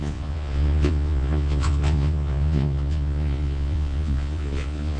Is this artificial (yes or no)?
yes